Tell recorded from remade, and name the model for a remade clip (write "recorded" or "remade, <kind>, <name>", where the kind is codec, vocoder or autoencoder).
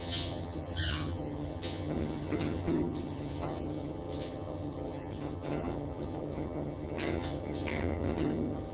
remade, vocoder, HiFi-GAN